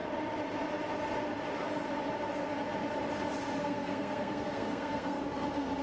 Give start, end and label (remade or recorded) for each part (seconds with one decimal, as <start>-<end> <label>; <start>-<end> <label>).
0.0-3.6 recorded; 3.6-5.2 remade; 5.2-5.8 recorded